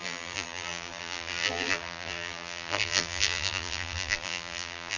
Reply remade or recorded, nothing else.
remade